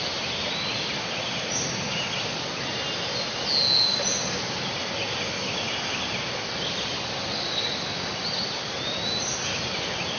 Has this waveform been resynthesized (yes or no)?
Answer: no